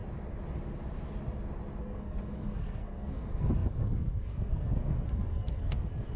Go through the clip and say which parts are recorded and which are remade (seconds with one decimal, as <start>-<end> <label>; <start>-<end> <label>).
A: 0.0-1.8 recorded; 1.8-6.2 remade